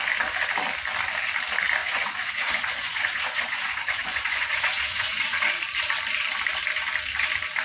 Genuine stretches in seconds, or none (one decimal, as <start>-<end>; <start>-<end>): 0.0-1.8; 5.5-7.6